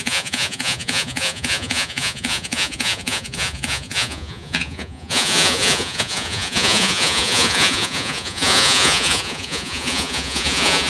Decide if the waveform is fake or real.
fake